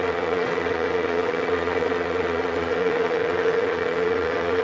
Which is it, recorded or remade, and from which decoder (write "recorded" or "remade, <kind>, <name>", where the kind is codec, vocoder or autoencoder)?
remade, vocoder, WaveNeXt